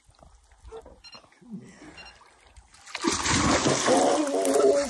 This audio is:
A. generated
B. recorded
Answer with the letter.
B